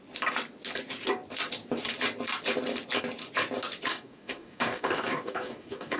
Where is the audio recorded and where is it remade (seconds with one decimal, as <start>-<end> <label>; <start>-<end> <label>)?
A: 0.0-3.9 recorded; 3.9-6.0 remade